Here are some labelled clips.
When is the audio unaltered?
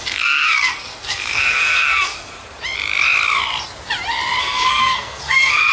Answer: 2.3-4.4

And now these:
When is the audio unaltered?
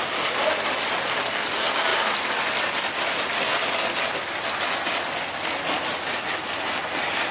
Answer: 0.0-7.3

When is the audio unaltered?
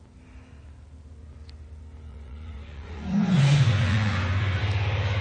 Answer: 0.0-2.1; 4.6-5.2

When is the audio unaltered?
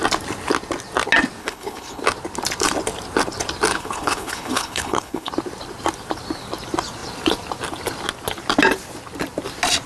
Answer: 0.0-1.4; 2.0-3.7; 5.3-9.9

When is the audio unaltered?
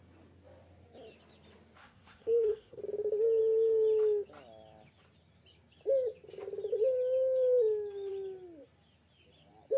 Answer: 0.0-1.8; 2.8-9.8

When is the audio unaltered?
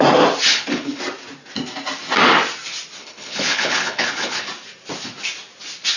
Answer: 0.0-0.5; 1.0-3.0; 4.5-6.0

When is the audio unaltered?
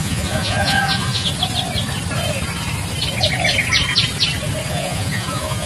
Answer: 1.3-4.7